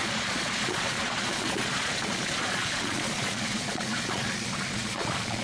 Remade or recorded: remade